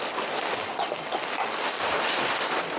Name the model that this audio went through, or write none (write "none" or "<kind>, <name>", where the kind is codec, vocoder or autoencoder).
none